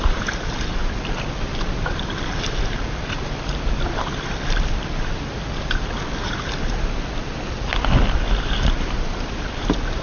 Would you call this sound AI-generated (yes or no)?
no